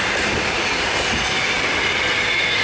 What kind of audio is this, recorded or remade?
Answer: recorded